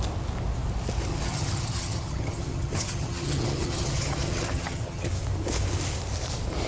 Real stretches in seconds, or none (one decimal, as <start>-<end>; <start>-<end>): 0.0-1.1; 5.1-6.7